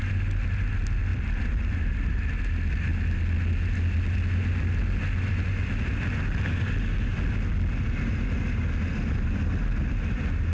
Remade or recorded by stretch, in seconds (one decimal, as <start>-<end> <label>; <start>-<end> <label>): 0.0-1.1 recorded; 1.1-2.1 remade; 2.1-10.5 recorded

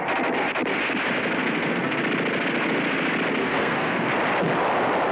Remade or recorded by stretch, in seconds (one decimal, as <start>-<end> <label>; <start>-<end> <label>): 0.0-1.4 recorded; 1.4-2.0 remade; 2.0-3.4 recorded; 3.4-4.1 remade; 4.1-5.1 recorded

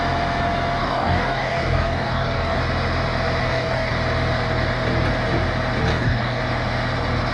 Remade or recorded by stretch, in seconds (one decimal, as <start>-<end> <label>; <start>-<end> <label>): 0.0-0.8 recorded; 0.8-2.6 remade; 2.6-3.4 recorded; 3.4-3.9 remade; 3.9-5.9 recorded; 5.9-6.4 remade; 6.4-7.3 recorded

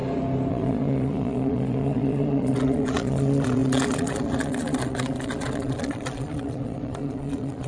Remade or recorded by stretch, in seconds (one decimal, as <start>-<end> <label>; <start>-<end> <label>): 0.0-0.5 recorded; 0.5-7.7 remade